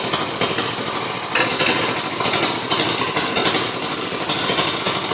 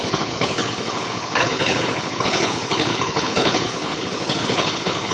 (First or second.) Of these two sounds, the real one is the first